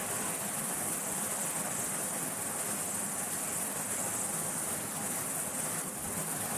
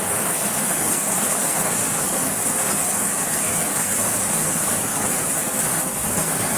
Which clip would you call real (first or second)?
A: first